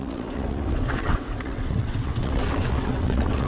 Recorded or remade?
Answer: remade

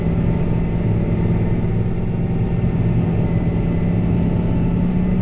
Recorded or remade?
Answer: recorded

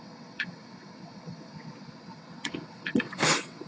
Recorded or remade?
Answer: remade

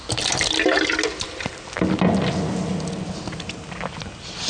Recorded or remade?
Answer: recorded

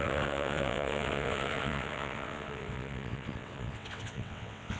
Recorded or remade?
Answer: remade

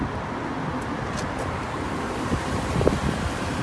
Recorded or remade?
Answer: recorded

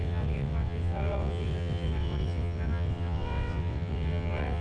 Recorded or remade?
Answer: remade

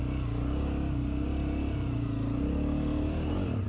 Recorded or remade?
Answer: recorded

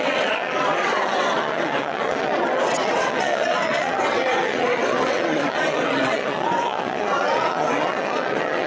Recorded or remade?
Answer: remade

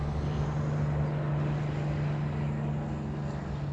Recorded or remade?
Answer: recorded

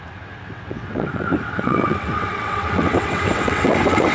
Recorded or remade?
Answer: remade